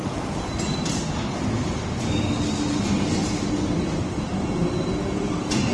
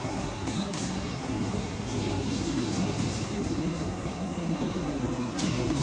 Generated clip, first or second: second